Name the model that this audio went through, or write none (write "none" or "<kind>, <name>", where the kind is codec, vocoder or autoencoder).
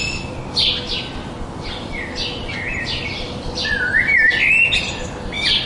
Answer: none